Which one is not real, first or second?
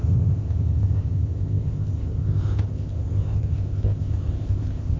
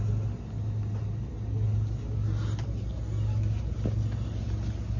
first